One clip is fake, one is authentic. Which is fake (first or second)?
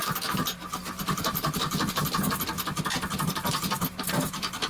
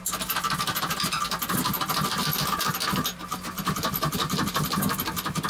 first